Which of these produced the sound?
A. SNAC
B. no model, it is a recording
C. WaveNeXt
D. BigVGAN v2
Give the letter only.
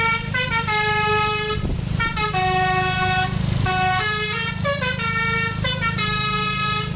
B